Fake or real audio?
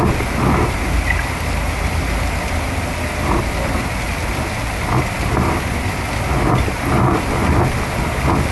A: real